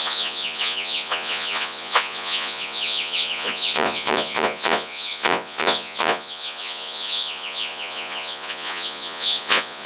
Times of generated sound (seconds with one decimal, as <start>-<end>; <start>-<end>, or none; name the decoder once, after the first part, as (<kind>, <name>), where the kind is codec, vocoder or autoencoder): 0.0-9.9 (vocoder, Vocos)